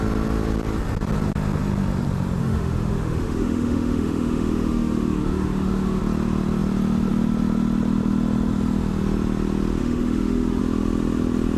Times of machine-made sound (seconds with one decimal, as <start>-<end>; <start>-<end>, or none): 2.4-6.0; 9.8-10.6

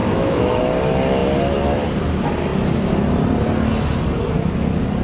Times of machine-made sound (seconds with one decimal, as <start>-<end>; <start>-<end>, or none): 0.0-0.6

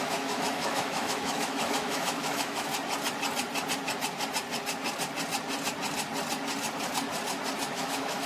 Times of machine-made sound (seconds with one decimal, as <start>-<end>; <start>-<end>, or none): 0.0-2.7; 7.7-8.3

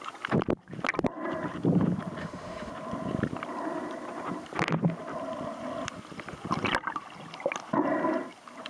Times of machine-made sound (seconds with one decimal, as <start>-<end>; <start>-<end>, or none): 2.2-2.7